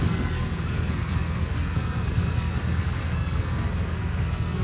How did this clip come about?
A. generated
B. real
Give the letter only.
A